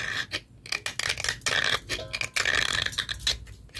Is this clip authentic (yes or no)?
yes